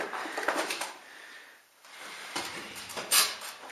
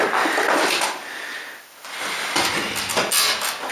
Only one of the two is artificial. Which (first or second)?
first